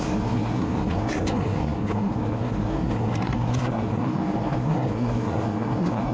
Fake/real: fake